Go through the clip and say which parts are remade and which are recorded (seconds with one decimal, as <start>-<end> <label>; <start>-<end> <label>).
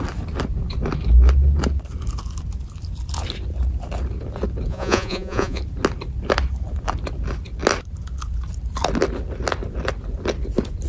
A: 0.0-4.7 recorded; 4.7-5.6 remade; 5.6-10.9 recorded